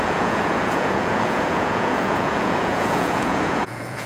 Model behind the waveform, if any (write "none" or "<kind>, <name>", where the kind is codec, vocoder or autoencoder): vocoder, Vocos